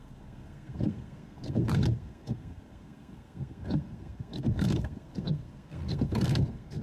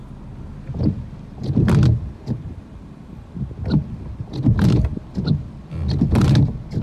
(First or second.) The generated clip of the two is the first